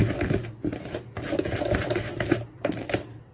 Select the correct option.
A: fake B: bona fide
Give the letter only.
B